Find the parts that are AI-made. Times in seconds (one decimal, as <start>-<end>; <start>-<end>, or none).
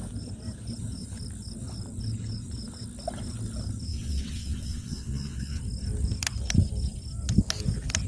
3.9-5.6